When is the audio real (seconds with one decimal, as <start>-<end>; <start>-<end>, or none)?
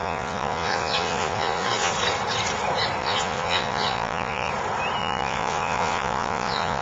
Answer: 1.9-3.0; 4.5-5.0